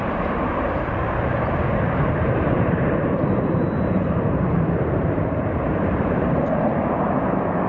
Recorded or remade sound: remade